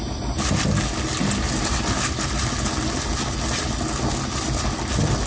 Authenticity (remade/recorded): recorded